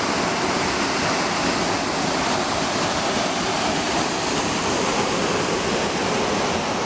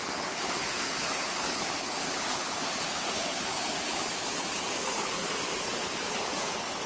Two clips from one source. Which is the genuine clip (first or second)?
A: first